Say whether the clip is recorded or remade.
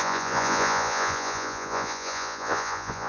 remade